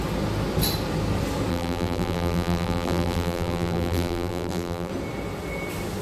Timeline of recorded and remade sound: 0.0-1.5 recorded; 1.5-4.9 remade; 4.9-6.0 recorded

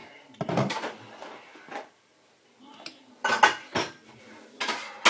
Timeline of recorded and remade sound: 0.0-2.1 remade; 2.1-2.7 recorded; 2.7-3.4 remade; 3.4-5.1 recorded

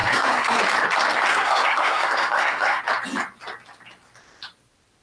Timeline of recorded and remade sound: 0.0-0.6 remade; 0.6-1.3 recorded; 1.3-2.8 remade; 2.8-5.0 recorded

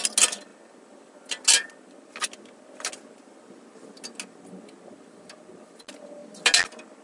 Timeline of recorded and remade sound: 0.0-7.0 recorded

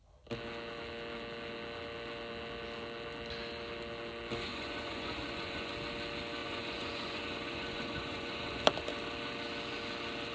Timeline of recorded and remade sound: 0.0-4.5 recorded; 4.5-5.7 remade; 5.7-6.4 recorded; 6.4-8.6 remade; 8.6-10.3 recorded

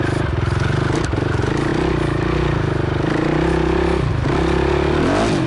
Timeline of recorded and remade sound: 0.0-5.5 recorded